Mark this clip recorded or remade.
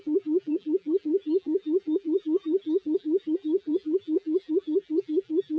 remade